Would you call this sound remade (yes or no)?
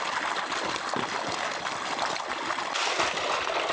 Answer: no